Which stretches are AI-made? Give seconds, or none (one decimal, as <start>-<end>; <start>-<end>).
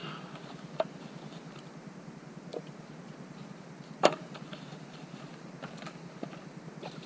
none